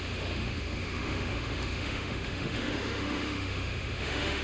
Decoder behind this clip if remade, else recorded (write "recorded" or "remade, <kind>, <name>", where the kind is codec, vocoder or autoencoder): remade, autoencoder, DAC-VAE